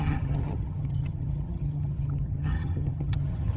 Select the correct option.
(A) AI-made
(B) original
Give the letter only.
A